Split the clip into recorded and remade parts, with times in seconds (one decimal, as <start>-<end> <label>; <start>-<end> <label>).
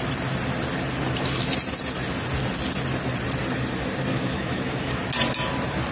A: 0.0-4.1 recorded; 4.1-4.9 remade; 4.9-5.9 recorded